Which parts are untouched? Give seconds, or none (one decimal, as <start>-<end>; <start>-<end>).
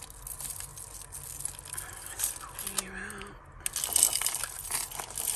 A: 0.0-5.4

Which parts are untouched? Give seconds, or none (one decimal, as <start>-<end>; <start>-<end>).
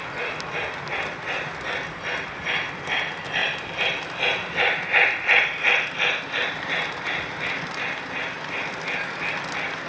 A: 0.0-9.9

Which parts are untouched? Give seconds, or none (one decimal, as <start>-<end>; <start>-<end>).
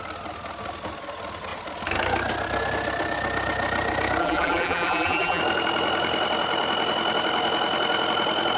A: 0.0-4.2; 5.4-8.6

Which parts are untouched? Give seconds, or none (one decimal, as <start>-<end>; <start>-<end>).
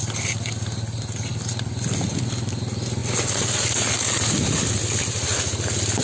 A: 0.0-6.0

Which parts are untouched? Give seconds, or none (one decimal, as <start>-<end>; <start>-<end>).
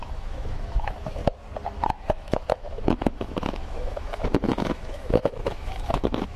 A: 1.2-1.9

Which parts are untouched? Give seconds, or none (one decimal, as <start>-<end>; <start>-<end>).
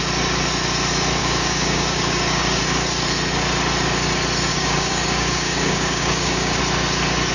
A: 0.0-1.2; 2.6-4.5; 6.6-7.3